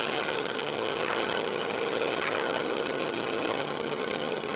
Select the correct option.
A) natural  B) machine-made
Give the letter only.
B